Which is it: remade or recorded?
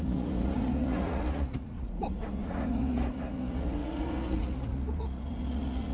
remade